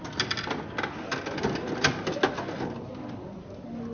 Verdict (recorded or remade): recorded